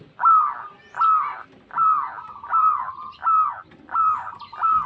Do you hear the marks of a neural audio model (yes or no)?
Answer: no